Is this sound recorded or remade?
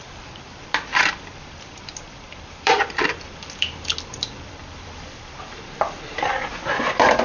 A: remade